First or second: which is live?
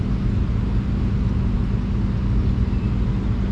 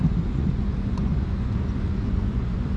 first